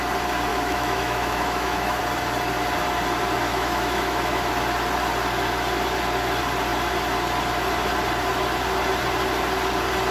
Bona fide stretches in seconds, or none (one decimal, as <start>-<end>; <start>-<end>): 0.0-0.5; 2.0-3.5; 4.3-10.1